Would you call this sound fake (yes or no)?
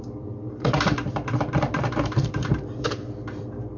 yes